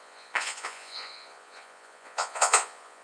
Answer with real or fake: fake